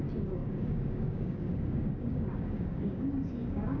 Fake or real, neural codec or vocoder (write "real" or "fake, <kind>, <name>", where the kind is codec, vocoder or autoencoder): fake, codec, DAC